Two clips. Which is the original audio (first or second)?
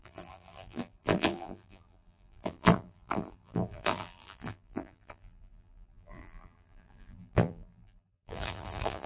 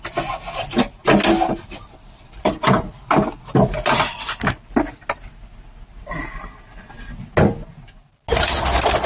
second